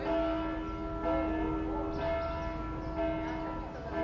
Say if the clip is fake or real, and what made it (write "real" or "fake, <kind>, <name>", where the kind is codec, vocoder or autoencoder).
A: real